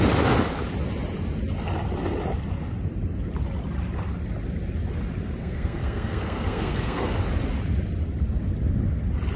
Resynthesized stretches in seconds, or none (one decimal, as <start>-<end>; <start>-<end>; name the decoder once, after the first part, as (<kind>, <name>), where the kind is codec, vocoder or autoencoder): 5.4-7.1 (codec, SNAC)